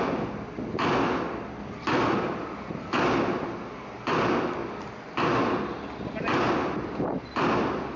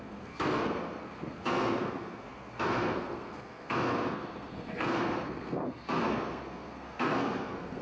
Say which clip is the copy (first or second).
second